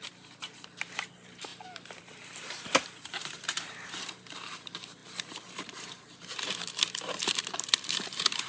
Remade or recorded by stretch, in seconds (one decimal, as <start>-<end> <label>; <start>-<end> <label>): 0.0-8.5 remade